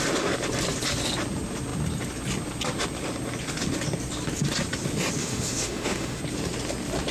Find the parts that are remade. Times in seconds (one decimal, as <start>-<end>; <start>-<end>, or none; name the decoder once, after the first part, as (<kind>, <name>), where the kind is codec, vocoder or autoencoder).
5.2-6.2 (autoencoder, DAC-VAE)